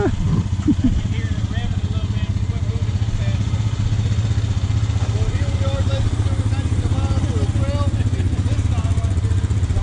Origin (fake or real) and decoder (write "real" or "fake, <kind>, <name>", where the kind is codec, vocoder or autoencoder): real